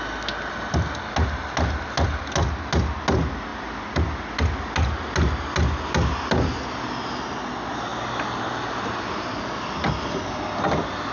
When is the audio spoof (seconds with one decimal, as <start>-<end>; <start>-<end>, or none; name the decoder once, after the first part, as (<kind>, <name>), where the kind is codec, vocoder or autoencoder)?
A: none